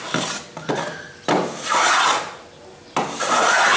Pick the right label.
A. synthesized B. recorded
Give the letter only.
B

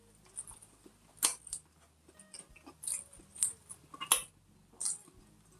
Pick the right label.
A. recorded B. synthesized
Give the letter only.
A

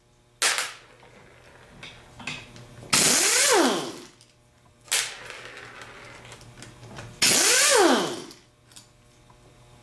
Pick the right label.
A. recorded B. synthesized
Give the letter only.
A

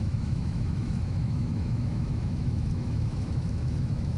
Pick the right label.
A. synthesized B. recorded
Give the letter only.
A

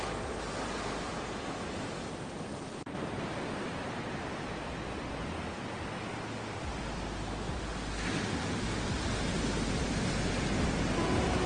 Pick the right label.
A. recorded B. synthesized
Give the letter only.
A